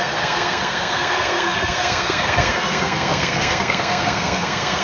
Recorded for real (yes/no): no